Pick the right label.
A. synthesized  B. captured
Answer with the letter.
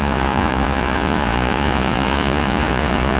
A